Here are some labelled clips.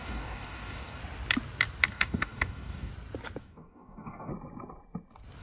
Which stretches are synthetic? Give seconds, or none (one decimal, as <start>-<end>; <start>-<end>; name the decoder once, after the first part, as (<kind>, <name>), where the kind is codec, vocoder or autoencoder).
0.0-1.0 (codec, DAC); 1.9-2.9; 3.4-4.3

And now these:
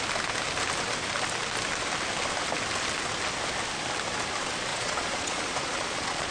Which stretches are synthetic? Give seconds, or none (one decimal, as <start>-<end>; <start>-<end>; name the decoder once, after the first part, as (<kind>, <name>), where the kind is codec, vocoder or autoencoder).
4.7-6.3 (vocoder, Vocos)

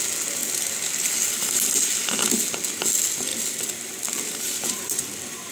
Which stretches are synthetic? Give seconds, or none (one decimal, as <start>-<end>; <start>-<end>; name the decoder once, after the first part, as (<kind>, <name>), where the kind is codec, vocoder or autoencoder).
none

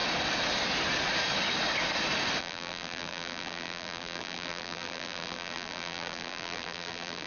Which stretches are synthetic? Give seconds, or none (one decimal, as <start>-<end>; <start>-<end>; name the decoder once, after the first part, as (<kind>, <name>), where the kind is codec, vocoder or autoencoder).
2.4-7.3 (vocoder, BigVGAN v2)

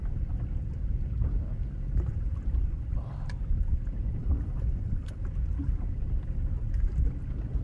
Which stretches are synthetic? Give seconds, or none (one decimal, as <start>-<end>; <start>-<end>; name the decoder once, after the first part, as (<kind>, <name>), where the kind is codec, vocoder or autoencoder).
4.2-5.2 (vocoder, BigVGAN v2)

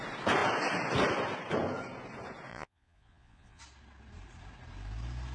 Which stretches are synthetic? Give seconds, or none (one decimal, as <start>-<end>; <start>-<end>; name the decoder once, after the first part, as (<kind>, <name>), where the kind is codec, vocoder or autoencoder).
2.5-3.6 (vocoder, Vocos)

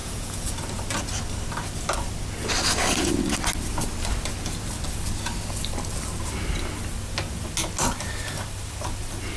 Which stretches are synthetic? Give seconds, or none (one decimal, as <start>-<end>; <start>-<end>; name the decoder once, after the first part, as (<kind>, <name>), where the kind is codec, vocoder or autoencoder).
0.0-0.5 (vocoder, Vocos)

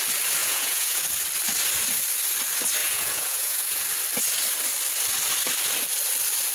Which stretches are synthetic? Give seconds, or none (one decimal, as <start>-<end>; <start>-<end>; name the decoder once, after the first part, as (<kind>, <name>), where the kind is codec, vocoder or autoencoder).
0.4-1.0 (vocoder, Vocos); 2.8-3.8